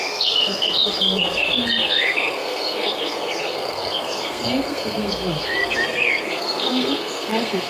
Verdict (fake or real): fake